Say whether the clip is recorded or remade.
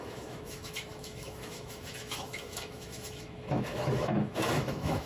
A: remade